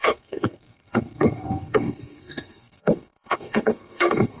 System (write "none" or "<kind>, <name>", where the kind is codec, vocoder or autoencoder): codec, SNAC